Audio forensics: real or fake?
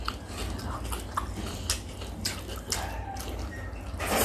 real